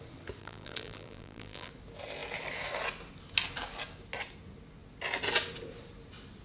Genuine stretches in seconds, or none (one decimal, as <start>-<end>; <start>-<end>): 0.0-0.4; 1.7-6.4